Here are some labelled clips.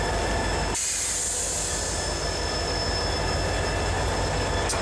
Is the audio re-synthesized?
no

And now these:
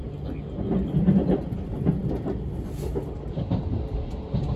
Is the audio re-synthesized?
no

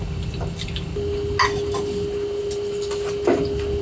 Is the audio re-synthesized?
no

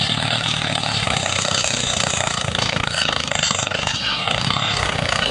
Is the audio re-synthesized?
yes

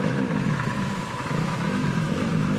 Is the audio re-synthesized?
yes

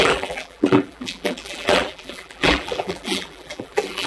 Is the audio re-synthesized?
yes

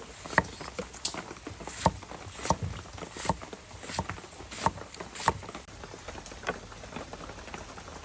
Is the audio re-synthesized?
no